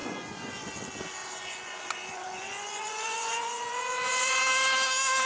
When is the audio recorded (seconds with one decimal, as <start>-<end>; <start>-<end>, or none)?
0.7-1.2; 4.4-5.3